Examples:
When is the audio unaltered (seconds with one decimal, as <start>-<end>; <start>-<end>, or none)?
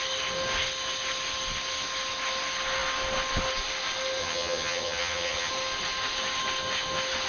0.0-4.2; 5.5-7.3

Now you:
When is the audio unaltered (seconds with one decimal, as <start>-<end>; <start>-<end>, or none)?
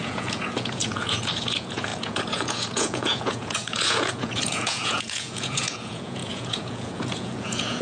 none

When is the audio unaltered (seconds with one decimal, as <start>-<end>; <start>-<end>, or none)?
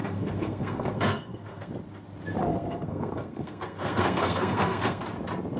1.7-2.5; 5.0-5.6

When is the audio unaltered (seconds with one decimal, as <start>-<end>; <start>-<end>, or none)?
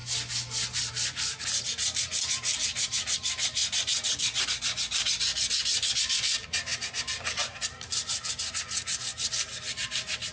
0.0-10.3